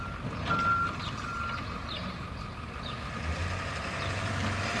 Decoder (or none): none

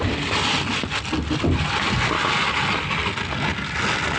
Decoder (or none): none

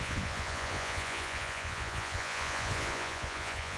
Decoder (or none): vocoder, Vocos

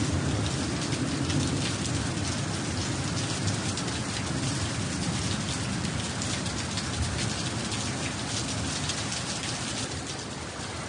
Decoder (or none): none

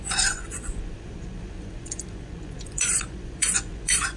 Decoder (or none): vocoder, Vocos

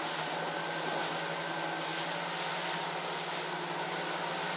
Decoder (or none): none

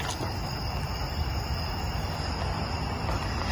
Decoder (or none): none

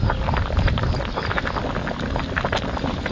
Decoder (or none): none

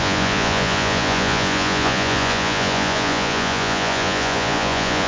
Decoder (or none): vocoder, Vocos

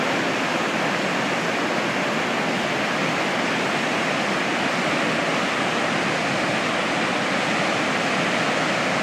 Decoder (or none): none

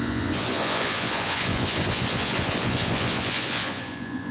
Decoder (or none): vocoder, Vocos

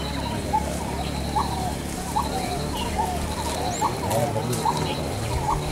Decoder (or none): none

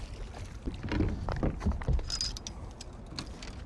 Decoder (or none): none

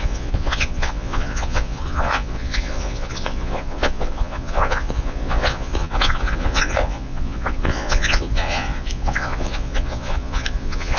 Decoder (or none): vocoder, Vocos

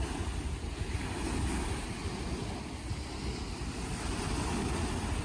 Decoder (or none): none